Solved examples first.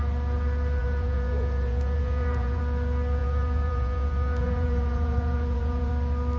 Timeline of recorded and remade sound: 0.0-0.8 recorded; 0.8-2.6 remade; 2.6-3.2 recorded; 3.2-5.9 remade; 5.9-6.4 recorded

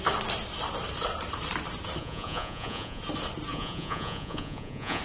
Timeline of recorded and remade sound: 0.0-2.0 recorded; 2.0-3.0 remade; 3.0-3.5 recorded; 3.5-5.0 remade

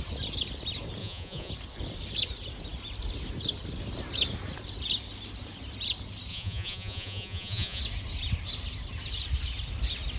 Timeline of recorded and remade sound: 0.0-1.0 recorded; 1.0-1.5 remade; 1.5-6.3 recorded; 6.3-7.8 remade; 7.8-10.2 recorded

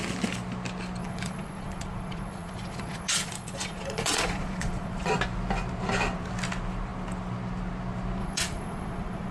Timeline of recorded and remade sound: 0.0-1.0 recorded; 1.0-5.1 remade; 5.1-8.2 recorded; 8.2-9.3 remade

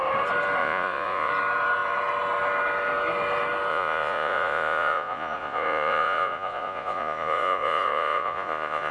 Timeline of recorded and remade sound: 0.0-0.6 recorded; 0.6-1.3 remade; 1.3-3.7 recorded; 3.7-8.9 remade

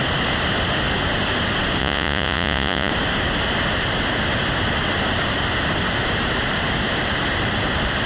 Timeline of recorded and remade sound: 0.0-1.8 recorded; 1.8-2.9 remade; 2.9-8.1 recorded

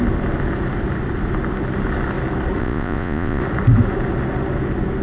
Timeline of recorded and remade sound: 0.0-2.6 recorded; 2.6-3.4 remade; 3.4-5.0 recorded